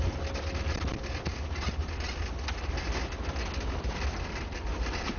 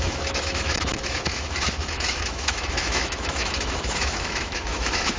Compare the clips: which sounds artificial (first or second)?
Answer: second